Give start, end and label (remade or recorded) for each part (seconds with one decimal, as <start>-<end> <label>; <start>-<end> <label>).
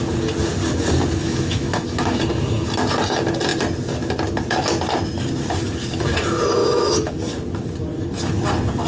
0.0-1.2 recorded; 1.2-2.2 remade; 2.2-6.6 recorded; 6.6-7.1 remade; 7.1-8.9 recorded